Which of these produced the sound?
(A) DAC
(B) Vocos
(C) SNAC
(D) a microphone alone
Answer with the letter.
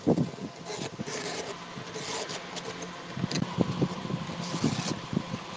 D